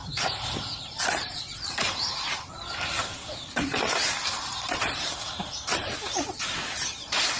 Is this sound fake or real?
fake